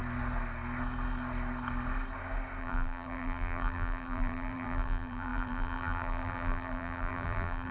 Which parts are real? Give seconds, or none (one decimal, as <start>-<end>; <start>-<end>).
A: 0.0-2.6